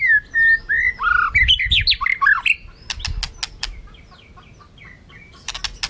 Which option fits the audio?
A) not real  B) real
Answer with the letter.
B